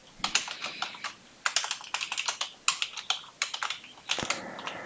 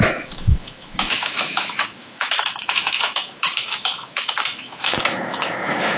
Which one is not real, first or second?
second